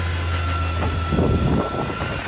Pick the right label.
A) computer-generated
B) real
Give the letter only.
B